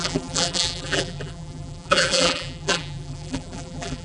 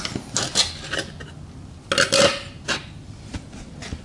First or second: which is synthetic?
first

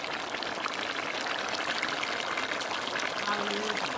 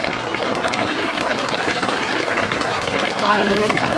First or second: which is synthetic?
second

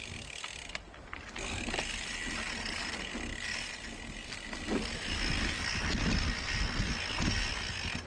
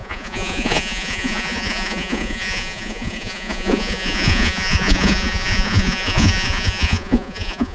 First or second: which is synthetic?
second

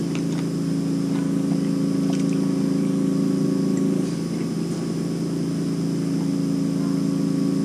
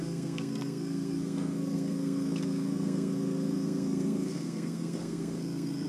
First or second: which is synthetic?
second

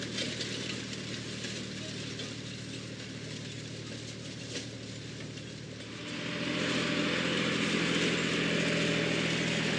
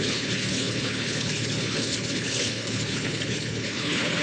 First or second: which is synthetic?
second